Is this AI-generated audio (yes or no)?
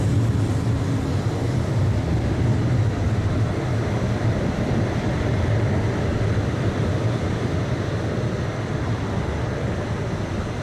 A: no